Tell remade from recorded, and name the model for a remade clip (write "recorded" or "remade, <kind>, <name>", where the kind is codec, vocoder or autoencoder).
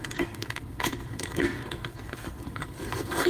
remade, codec, SNAC